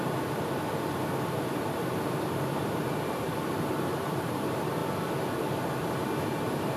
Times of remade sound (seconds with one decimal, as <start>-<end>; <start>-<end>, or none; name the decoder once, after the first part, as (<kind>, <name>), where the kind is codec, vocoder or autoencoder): 0.0-4.8 (vocoder, BigVGAN v2); 5.9-6.8